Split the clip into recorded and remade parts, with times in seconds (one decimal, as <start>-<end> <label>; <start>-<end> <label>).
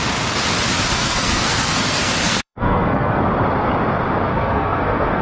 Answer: 0.0-0.9 recorded; 0.9-3.2 remade; 3.2-4.3 recorded; 4.3-5.2 remade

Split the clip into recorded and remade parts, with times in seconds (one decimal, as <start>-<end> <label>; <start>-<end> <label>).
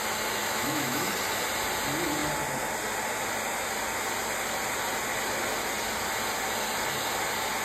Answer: 0.0-0.4 recorded; 0.4-1.1 remade; 1.1-7.6 recorded